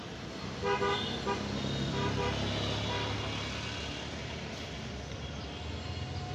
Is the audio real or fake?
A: real